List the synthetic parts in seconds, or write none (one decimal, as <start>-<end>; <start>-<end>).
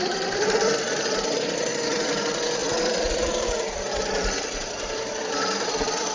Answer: 0.0-6.1